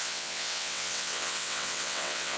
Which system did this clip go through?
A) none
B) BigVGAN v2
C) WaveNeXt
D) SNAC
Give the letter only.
C